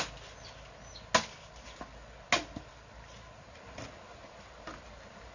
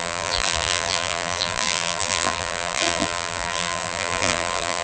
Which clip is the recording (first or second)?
first